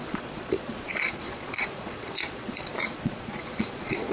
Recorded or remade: remade